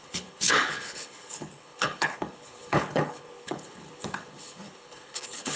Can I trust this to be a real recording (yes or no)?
no